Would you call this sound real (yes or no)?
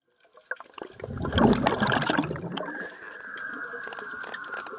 yes